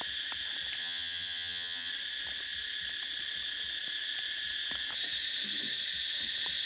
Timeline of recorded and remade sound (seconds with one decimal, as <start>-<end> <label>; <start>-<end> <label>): 0.0-0.8 recorded; 0.8-1.9 remade; 1.9-6.7 recorded